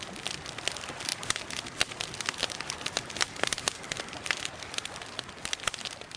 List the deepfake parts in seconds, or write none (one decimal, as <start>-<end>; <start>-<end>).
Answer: none